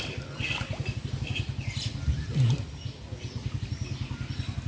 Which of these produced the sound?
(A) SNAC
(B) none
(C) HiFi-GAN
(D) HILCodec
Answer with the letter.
B